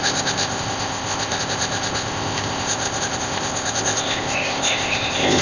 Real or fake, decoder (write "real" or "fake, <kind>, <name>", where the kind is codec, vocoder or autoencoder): fake, codec, ZipCodec